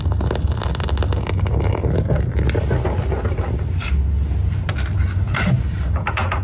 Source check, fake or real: real